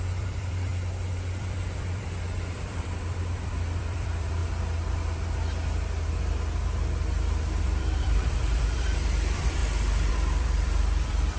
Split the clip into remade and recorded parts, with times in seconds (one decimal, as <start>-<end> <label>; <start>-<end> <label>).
0.0-0.7 remade; 0.7-1.4 recorded; 1.4-4.4 remade; 4.4-7.6 recorded; 7.6-9.6 remade; 9.6-10.1 recorded; 10.1-11.4 remade